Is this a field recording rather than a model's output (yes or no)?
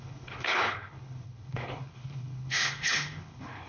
no